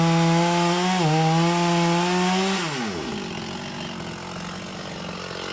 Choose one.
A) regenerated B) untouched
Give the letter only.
B